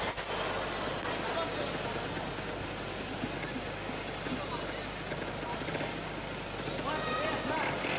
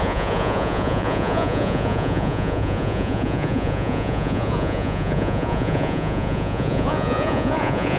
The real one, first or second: first